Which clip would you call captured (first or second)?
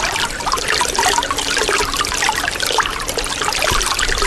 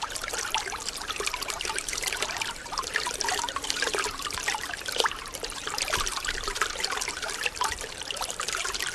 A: first